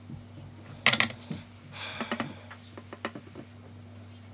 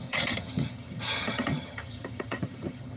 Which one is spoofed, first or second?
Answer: second